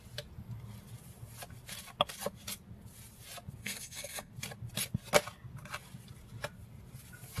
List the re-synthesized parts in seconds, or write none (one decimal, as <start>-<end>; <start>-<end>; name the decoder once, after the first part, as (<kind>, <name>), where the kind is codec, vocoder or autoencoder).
3.6-4.3 (codec, SNAC)